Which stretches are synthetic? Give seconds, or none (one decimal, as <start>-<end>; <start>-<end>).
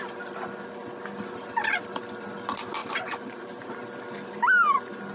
2.8-3.7